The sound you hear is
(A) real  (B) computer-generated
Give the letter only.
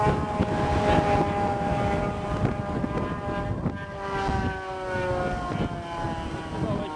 A